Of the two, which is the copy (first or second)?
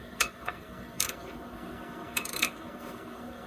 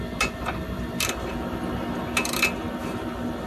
first